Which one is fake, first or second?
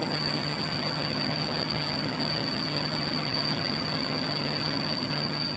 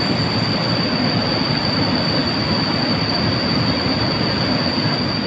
first